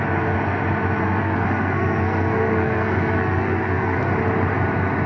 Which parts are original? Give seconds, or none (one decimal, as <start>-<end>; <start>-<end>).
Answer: 0.0-1.0; 4.1-5.1